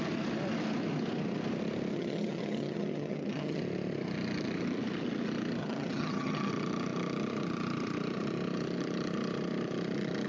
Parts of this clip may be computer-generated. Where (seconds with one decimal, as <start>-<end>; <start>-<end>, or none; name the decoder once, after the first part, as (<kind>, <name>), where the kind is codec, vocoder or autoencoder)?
1.9-3.6 (vocoder, HiFi-GAN); 5.6-6.5